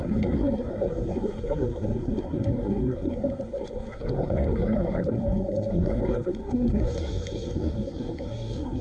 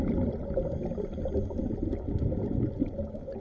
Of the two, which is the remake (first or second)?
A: first